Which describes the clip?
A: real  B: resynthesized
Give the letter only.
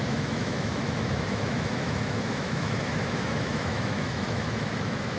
B